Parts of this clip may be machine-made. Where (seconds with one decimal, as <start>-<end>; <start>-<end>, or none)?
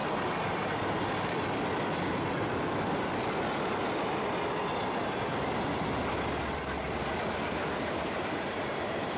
none